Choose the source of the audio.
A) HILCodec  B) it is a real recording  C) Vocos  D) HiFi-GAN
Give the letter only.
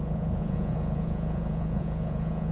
C